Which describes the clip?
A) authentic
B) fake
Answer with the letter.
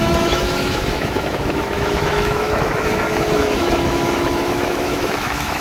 B